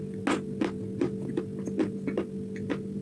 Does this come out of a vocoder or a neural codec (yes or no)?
no